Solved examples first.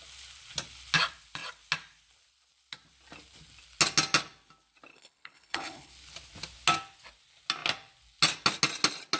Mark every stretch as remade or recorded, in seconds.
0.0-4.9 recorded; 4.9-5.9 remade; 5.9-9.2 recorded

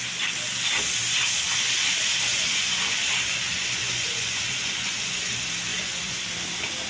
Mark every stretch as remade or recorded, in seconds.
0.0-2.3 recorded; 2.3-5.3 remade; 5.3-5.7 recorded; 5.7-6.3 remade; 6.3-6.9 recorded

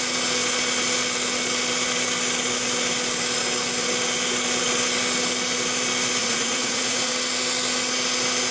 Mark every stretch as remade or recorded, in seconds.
0.0-6.2 recorded; 6.2-7.1 remade; 7.1-8.5 recorded

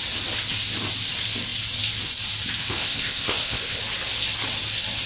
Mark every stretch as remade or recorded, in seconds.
0.0-2.6 recorded; 2.6-3.8 remade; 3.8-5.1 recorded

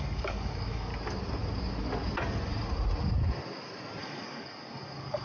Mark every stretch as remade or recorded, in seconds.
0.0-0.9 remade; 0.9-4.0 recorded; 4.0-5.2 remade

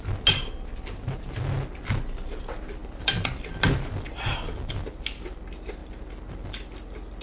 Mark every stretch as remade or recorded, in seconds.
0.0-7.2 recorded

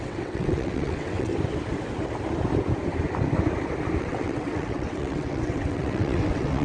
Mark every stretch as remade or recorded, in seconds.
0.0-1.3 remade; 1.3-4.0 recorded; 4.0-6.6 remade

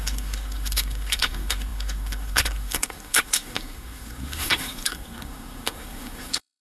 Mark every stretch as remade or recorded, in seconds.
0.0-6.6 remade